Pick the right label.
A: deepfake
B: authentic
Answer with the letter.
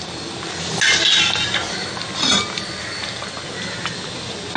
B